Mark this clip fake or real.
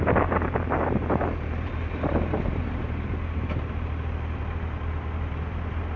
real